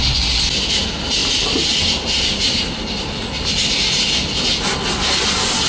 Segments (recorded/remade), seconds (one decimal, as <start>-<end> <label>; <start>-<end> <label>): 0.0-5.7 recorded